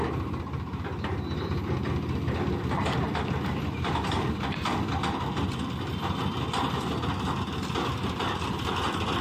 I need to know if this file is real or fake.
real